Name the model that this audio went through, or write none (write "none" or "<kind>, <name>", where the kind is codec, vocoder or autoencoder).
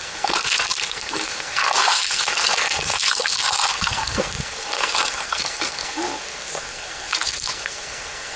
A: codec, SNAC